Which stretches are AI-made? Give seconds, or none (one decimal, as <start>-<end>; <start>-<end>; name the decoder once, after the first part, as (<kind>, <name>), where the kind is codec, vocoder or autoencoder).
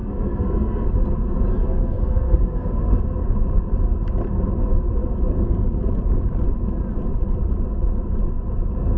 0.0-0.9 (codec, SNAC); 1.6-3.0